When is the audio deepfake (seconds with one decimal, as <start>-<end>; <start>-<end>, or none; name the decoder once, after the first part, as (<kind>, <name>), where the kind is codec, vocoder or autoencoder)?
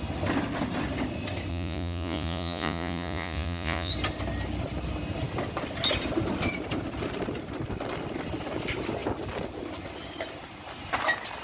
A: 1.5-3.9 (vocoder, Vocos)